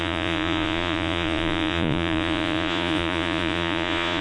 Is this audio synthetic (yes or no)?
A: yes